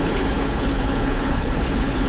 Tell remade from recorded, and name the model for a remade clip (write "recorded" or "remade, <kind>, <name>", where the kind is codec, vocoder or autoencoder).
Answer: remade, codec, HILCodec